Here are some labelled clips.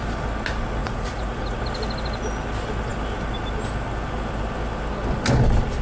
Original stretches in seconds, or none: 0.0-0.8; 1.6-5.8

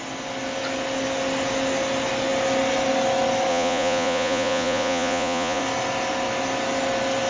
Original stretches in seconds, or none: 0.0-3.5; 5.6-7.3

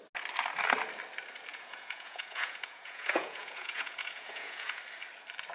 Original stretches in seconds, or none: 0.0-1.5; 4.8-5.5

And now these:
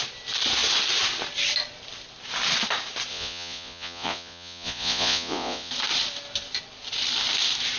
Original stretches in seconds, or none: 0.0-3.1; 5.7-7.8

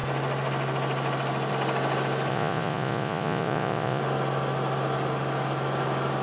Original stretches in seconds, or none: 0.0-2.3; 4.0-6.2